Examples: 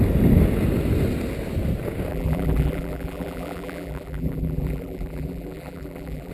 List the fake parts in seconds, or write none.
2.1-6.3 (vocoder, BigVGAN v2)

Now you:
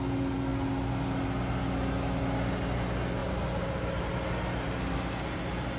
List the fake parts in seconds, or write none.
3.2-4.1 (vocoder, BigVGAN v2)

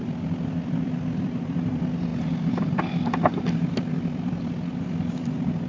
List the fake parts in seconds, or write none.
0.0-2.1 (vocoder, BigVGAN v2); 2.6-5.7

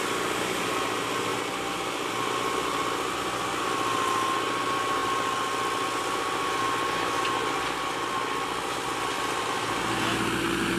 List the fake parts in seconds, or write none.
1.3-2.1 (vocoder, BigVGAN v2)

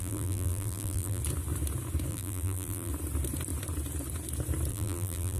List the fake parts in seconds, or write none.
0.0-1.2 (vocoder, BigVGAN v2); 2.1-2.9; 4.7-5.4